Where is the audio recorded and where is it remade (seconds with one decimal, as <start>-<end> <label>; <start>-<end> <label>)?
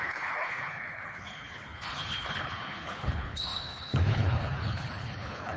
0.0-5.6 remade